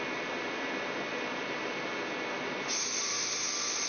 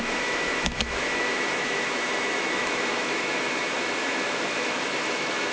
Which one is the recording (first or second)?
first